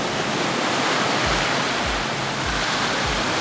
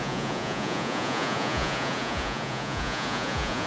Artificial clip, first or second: second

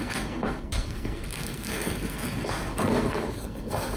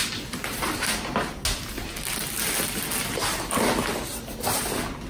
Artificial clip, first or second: first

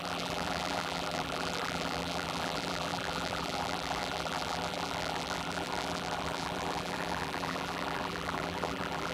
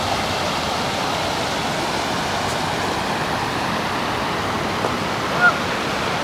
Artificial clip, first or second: first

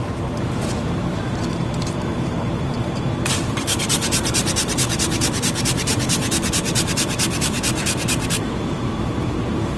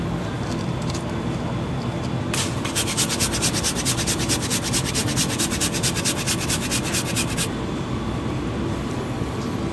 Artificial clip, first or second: first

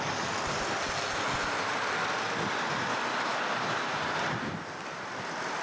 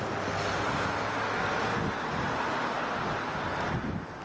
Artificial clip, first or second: first